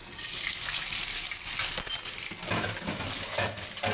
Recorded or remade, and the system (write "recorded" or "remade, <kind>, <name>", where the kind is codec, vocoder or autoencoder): recorded